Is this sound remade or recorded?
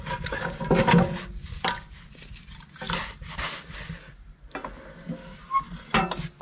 recorded